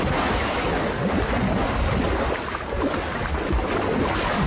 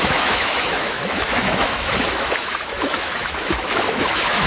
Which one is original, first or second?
first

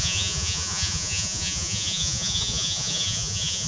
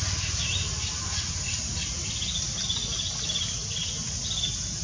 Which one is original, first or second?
second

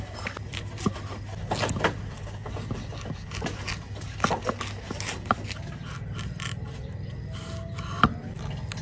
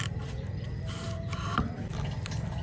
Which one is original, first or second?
first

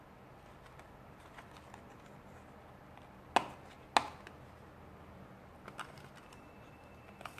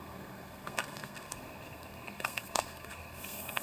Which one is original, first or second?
first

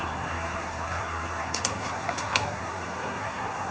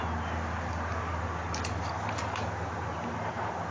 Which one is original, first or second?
second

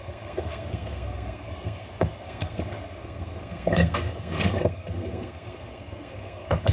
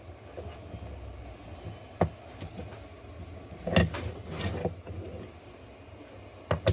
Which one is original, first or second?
second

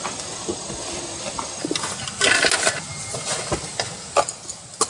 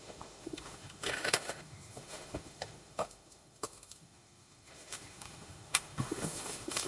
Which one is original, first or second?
first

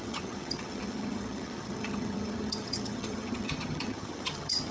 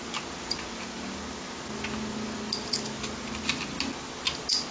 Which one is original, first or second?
second